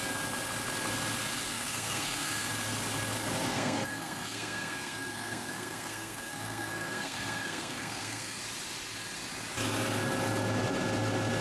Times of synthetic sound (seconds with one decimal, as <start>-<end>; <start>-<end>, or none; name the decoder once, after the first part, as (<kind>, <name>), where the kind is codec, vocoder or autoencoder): 1.5-2.5 (codec, SNAC); 3.5-8.4